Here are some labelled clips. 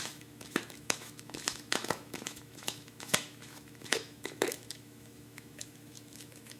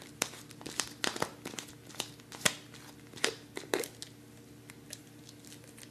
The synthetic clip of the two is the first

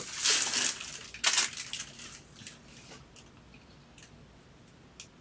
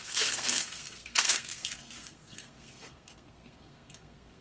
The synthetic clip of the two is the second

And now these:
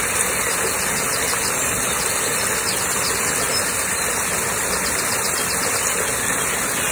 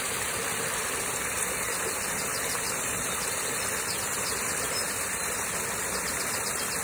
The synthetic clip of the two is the second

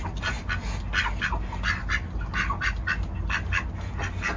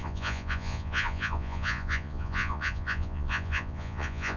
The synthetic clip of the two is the second